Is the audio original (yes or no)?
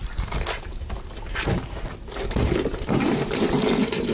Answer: yes